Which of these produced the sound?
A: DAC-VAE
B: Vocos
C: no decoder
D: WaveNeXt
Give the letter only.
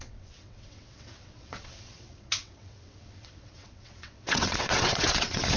D